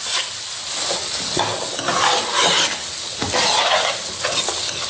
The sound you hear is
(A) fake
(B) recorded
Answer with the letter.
B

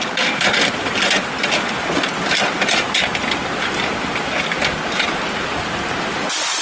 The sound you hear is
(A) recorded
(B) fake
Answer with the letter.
A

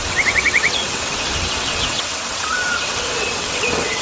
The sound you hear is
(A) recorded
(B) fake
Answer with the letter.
B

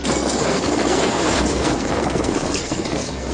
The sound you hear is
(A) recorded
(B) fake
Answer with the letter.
B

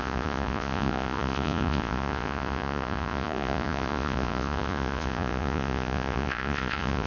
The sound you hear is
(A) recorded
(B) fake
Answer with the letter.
B